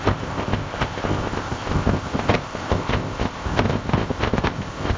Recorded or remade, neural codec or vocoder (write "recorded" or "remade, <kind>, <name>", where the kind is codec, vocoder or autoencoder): remade, codec, ZipCodec